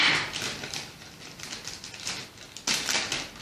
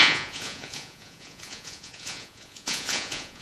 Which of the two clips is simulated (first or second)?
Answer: second